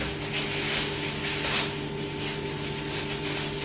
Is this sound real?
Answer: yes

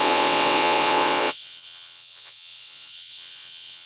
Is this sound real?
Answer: no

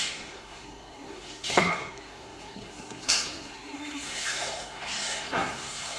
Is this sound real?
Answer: no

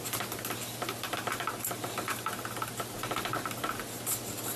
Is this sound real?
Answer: yes